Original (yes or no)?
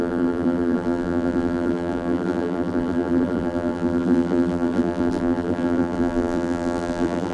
no